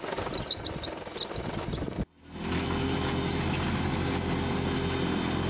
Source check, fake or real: real